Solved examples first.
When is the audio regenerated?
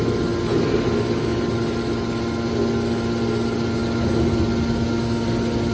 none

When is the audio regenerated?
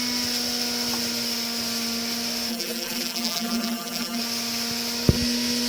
2.5-4.2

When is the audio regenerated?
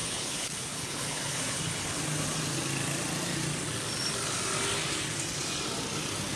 0.0-2.0